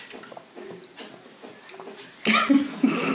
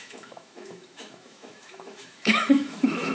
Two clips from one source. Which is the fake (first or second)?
second